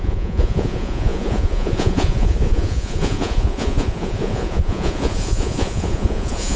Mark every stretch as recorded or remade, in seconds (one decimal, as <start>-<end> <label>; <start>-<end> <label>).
0.0-6.6 remade